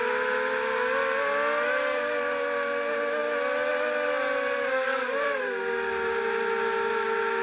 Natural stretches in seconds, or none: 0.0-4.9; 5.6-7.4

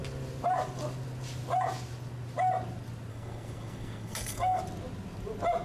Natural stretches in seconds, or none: 0.0-3.1; 4.6-5.6

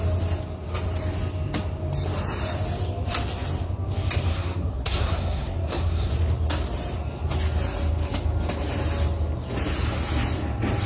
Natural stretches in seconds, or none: 0.0-4.3; 6.1-10.9

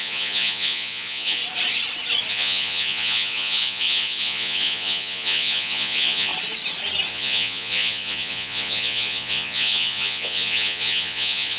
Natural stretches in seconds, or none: 1.4-2.3; 6.3-7.1

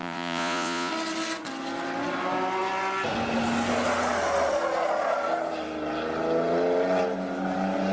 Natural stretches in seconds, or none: 0.9-7.9

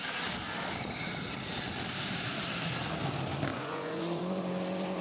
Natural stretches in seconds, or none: 0.0-3.5; 4.2-5.0

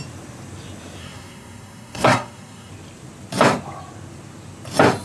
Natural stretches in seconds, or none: 0.0-1.0; 2.7-5.0